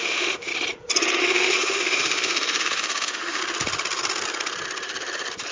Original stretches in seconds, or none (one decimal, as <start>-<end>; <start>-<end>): 0.5-1.2; 3.4-5.5